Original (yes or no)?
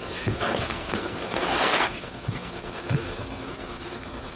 no